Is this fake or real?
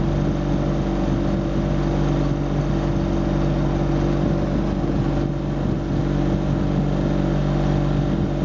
real